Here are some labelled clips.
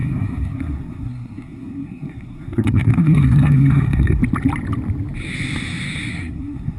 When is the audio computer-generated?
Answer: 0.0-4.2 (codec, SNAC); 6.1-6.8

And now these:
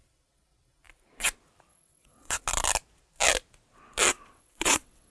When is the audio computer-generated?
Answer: 1.7-2.4 (vocoder, WaveNeXt); 4.1-5.1

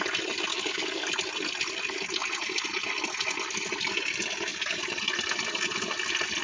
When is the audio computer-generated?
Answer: 0.5-1.1 (codec, DAC)

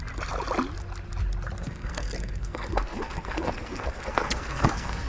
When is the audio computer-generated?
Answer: 1.6-5.1 (codec, SNAC)